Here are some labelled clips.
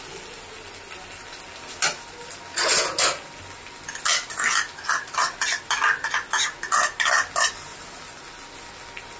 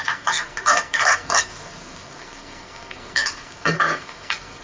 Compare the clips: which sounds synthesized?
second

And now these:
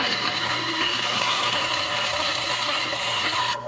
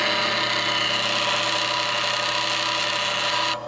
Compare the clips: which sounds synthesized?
first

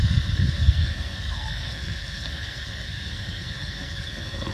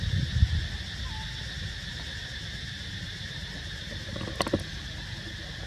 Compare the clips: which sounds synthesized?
first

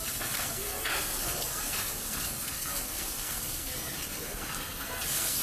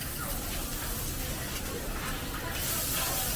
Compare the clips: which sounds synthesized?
first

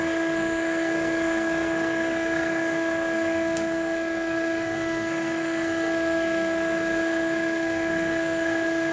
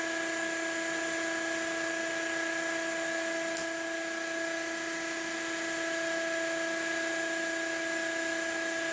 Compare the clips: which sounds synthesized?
first